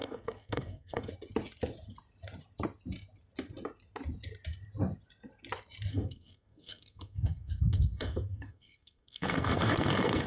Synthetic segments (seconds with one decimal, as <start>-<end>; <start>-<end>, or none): 0.0-1.1; 5.9-10.3